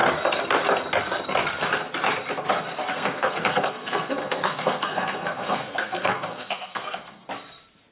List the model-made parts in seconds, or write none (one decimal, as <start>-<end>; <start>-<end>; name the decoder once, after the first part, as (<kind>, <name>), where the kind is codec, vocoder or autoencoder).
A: 2.9-7.2 (codec, SNAC)